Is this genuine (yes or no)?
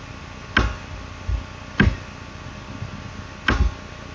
yes